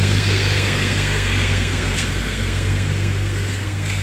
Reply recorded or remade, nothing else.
remade